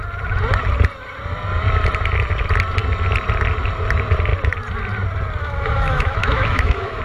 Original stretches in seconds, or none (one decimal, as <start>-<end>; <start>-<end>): 0.0-5.4

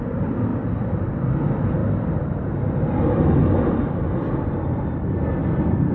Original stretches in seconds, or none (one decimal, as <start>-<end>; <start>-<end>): 0.0-5.9

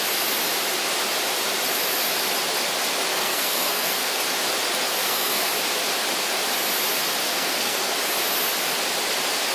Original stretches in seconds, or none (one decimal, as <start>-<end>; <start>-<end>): 0.0-3.1; 4.2-5.0; 5.5-7.2; 7.9-9.5